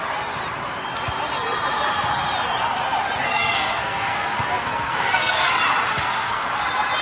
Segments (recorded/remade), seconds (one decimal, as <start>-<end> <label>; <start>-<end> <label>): 0.0-3.3 recorded; 3.3-5.5 remade; 5.5-5.9 recorded; 5.9-6.5 remade; 6.5-7.0 recorded